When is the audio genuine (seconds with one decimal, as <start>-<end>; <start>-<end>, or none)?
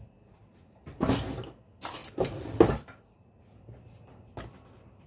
0.0-0.4; 1.2-5.1